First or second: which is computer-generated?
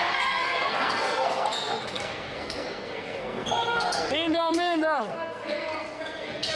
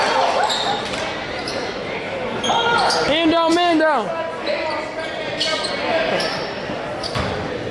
first